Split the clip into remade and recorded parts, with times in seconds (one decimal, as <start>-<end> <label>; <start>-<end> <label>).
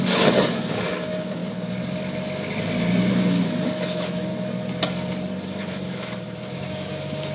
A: 0.0-1.4 remade; 1.4-3.1 recorded; 3.1-4.3 remade; 4.3-5.7 recorded; 5.7-7.3 remade